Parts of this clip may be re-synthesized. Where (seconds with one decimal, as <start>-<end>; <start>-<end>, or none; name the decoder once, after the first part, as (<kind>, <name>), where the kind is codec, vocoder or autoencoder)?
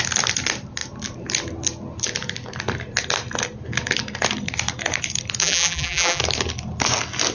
5.4-6.2 (vocoder, BigVGAN v2)